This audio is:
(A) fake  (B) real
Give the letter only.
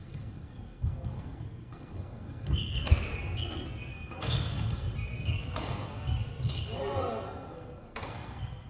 A